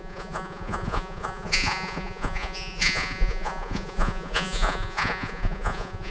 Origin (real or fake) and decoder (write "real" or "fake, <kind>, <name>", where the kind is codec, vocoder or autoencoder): fake, vocoder, Vocos